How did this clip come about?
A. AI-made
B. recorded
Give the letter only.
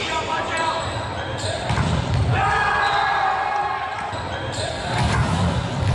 A